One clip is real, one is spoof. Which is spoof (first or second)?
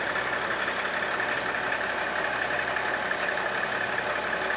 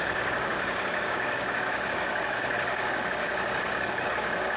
second